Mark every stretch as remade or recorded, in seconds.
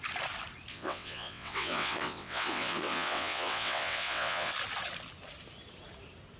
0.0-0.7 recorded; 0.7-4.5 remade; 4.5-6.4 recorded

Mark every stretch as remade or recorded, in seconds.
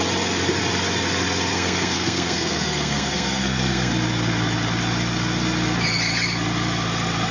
0.0-1.5 recorded; 1.5-3.9 remade; 3.9-7.3 recorded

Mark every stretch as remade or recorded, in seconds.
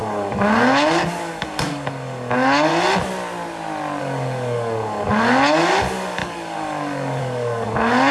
0.0-2.7 remade; 2.7-4.0 recorded; 4.0-8.1 remade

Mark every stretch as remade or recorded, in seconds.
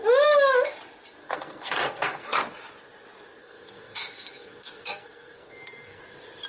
0.0-1.2 recorded; 1.2-2.4 remade; 2.4-3.4 recorded; 3.4-6.0 remade; 6.0-6.5 recorded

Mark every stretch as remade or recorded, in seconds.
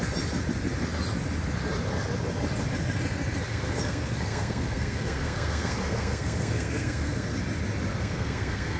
0.0-3.5 recorded; 3.5-7.4 remade; 7.4-7.9 recorded; 7.9-8.8 remade